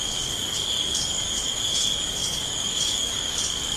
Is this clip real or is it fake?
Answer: fake